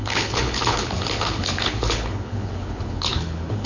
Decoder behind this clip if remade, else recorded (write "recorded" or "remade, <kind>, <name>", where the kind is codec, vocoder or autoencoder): remade, codec, HILCodec